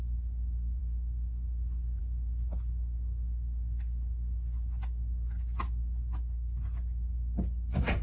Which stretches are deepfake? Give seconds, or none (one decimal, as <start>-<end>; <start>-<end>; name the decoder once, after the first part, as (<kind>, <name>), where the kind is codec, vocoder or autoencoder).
none